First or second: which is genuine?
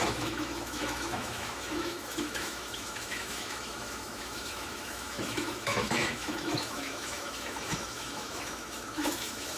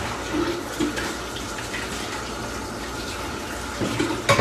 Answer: second